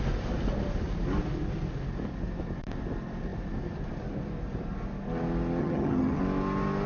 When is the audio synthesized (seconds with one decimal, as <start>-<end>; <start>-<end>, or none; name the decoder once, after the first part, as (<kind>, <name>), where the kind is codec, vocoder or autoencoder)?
5.6-6.2 (vocoder, HiFi-GAN)